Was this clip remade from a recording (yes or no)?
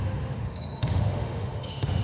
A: yes